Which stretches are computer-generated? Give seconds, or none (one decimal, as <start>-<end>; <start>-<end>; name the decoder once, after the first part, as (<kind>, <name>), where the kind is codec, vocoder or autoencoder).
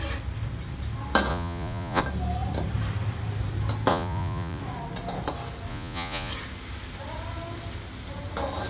1.3-2.0 (vocoder, Vocos); 3.9-4.6; 5.7-6.3